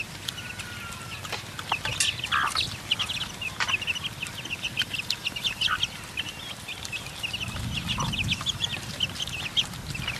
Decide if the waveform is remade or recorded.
recorded